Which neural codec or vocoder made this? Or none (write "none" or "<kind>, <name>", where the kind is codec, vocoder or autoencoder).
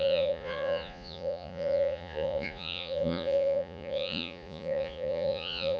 vocoder, Vocos